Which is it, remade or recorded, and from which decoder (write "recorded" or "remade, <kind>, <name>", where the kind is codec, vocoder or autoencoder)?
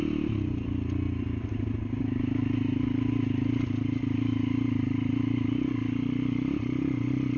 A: recorded